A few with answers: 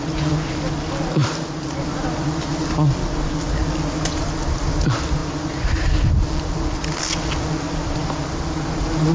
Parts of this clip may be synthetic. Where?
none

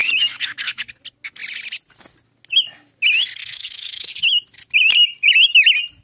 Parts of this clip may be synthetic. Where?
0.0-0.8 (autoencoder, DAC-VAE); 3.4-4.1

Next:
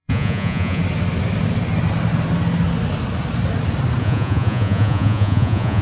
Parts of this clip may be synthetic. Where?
0.0-0.8 (vocoder, Vocos); 4.0-5.8